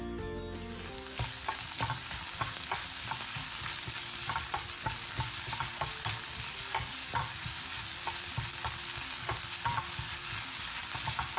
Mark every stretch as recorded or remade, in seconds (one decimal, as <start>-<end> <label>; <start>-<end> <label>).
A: 0.0-11.4 recorded